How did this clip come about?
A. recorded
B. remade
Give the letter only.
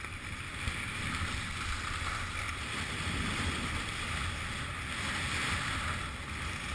A